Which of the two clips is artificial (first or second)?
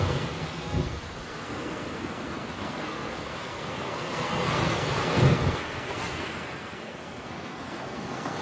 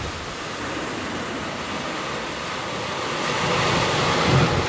first